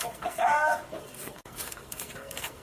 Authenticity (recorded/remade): remade